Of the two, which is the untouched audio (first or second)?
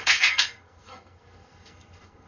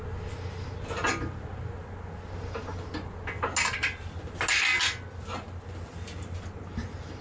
second